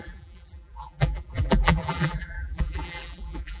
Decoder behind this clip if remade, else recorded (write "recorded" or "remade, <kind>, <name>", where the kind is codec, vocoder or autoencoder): remade, vocoder, BigVGAN v2